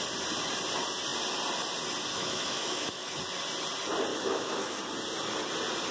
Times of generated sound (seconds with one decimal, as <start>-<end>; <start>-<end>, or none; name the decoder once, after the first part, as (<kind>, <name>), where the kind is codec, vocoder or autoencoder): 2.1-3.1 (autoencoder, DAC-VAE); 4.1-4.8